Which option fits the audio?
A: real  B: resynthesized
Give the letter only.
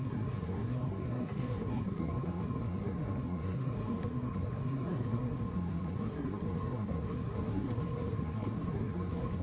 B